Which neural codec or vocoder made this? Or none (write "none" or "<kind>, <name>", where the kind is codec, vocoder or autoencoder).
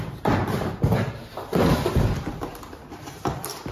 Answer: vocoder, BigVGAN v2